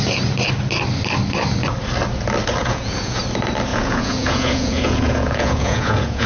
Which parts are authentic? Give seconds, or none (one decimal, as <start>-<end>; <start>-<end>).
0.0-2.6; 3.2-3.7